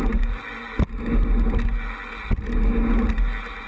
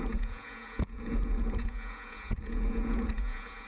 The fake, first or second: second